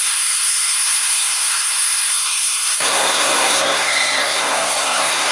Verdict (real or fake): fake